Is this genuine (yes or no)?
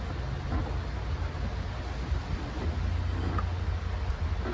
yes